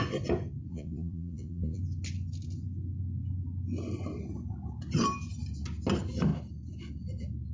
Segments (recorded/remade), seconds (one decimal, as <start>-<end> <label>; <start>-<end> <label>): 0.0-0.7 recorded; 0.7-1.8 remade; 1.8-7.5 recorded